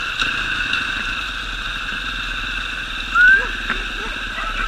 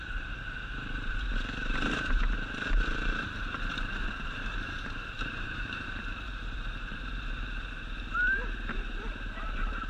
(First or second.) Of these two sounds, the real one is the first